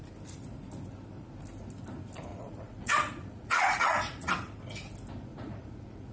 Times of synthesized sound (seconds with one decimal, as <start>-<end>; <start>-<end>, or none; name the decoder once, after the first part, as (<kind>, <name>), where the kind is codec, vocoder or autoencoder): 2.3-4.6 (vocoder, Vocos); 5.3-6.1